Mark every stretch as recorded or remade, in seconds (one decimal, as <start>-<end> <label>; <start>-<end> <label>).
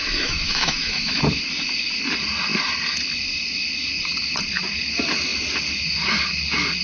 0.0-1.2 remade; 1.2-6.8 recorded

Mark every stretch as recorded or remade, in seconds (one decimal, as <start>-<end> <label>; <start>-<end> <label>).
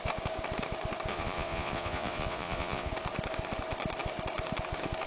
0.0-1.1 recorded; 1.1-2.9 remade; 2.9-5.1 recorded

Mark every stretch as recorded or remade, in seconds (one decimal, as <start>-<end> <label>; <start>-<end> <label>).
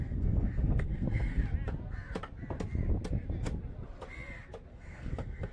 0.0-1.4 remade; 1.4-4.7 recorded; 4.7-5.5 remade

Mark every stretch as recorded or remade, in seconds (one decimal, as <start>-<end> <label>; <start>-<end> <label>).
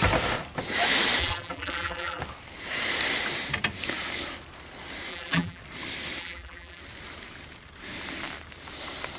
0.0-1.2 recorded; 1.2-2.2 remade; 2.2-5.1 recorded; 5.1-5.6 remade; 5.6-6.2 recorded; 6.2-6.8 remade; 6.8-9.2 recorded